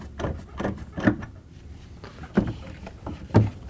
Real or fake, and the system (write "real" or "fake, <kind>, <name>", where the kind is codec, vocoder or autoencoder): real